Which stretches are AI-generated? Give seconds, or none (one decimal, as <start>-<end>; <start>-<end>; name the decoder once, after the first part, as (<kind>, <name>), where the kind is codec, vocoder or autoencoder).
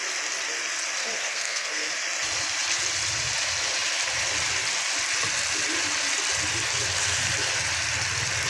1.1-1.9 (codec, SNAC)